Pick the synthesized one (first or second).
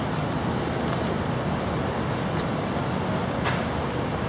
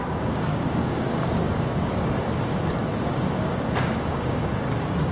second